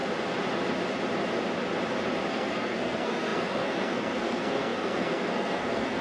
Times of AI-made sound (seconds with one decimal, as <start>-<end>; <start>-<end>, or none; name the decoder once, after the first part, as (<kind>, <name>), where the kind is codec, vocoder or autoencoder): 2.3-6.0 (codec, SNAC)